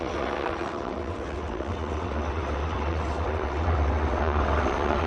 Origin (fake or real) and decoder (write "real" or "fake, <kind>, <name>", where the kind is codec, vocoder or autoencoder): fake, vocoder, WaveNeXt